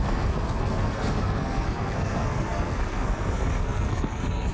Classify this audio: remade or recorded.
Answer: remade